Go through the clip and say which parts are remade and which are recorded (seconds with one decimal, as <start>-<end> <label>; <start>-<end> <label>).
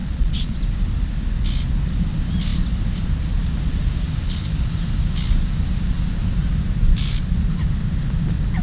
0.0-0.6 remade; 0.6-8.6 recorded